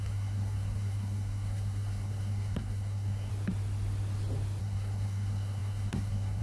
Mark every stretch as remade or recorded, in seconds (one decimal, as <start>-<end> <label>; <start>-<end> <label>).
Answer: 0.0-3.3 remade; 3.3-4.6 recorded; 4.6-6.4 remade